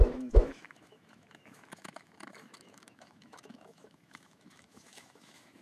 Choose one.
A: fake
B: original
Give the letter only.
A